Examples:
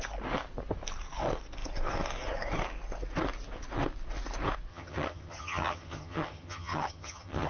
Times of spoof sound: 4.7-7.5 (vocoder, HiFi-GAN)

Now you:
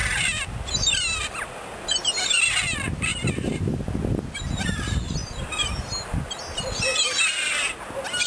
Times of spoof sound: 3.1-3.8 (vocoder, BigVGAN v2); 5.2-6.4

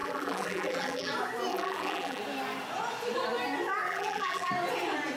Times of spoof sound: 0.0-1.1 (vocoder, BigVGAN v2); 1.5-2.2; 3.9-4.5

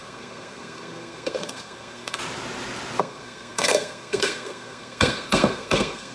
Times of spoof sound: 0.0-2.2 (codec, SNAC); 3.0-6.1

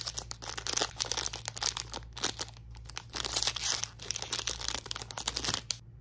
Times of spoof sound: none

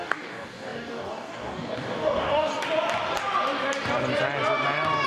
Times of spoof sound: 0.0-2.5 (codec, DAC)